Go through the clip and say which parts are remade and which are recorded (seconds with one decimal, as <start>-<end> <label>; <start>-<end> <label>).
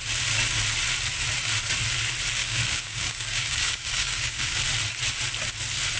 0.0-2.4 recorded; 2.4-4.6 remade; 4.6-6.0 recorded